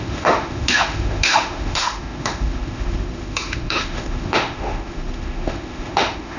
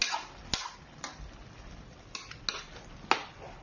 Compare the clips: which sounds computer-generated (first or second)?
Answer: first